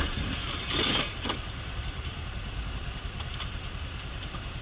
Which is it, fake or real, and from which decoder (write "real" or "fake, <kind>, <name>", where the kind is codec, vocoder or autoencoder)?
real